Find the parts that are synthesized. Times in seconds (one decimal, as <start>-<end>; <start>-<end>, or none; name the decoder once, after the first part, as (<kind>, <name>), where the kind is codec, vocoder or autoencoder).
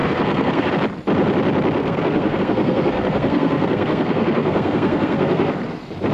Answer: 0.0-0.7 (codec, SNAC); 1.8-5.5